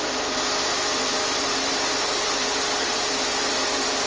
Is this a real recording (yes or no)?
yes